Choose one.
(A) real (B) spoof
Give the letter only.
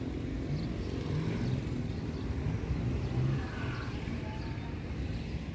A